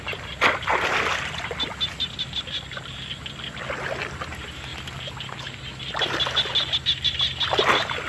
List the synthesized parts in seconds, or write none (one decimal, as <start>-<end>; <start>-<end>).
none